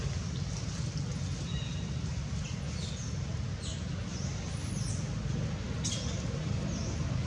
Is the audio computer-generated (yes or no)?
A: no